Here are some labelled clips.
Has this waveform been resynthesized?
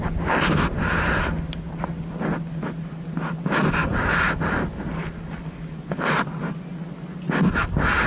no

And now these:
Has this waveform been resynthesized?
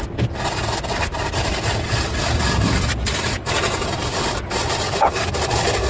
no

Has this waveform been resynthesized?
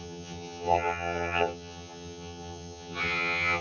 yes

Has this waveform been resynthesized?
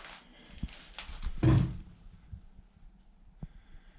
no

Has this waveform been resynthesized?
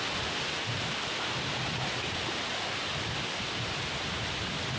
no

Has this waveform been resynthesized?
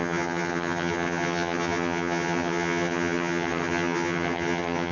yes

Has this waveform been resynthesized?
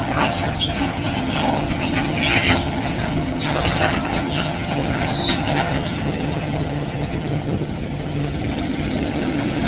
yes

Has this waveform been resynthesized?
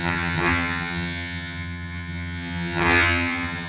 yes